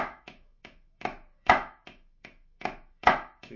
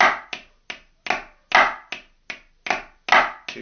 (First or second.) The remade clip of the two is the first